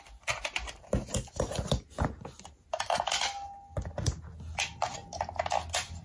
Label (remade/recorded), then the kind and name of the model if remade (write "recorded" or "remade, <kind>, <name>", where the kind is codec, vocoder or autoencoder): recorded